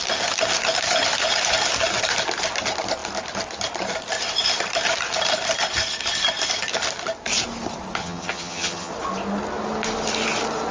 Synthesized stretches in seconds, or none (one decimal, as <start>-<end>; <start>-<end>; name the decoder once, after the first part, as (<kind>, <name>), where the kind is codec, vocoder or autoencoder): 8.0-8.9 (vocoder, HiFi-GAN)